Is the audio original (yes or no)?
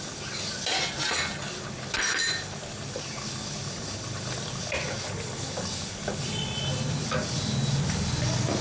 yes